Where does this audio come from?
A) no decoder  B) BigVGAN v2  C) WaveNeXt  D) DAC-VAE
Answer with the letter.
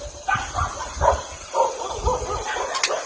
A